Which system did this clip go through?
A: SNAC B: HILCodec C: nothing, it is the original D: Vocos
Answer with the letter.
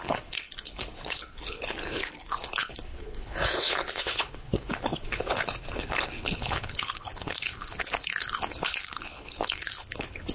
B